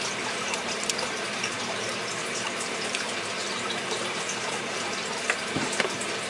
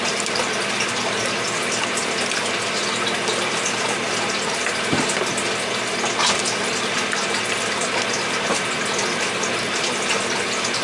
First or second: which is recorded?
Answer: second